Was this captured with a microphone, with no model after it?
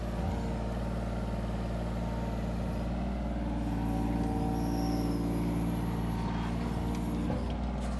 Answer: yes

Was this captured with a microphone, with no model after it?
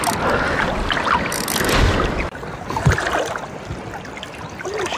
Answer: yes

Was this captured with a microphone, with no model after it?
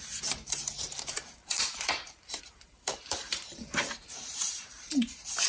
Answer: no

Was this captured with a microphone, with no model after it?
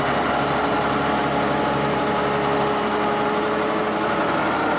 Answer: yes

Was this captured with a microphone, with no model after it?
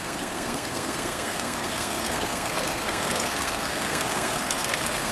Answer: no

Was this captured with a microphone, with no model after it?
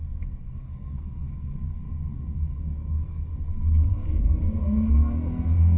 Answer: no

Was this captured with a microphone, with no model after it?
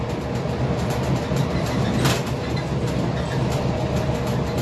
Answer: yes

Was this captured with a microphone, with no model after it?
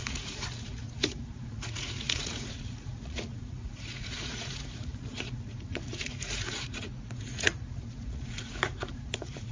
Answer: no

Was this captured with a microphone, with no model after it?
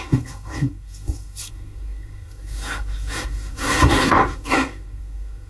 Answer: no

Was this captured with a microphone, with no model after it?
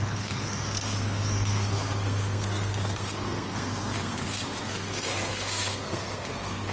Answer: no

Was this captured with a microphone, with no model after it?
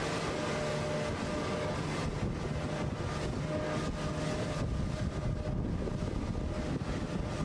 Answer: yes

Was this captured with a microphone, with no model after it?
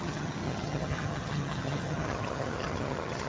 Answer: no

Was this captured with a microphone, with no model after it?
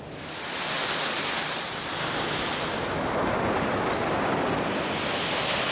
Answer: yes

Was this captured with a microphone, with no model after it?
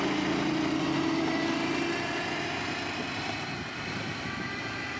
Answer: yes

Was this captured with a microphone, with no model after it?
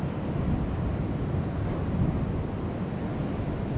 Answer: yes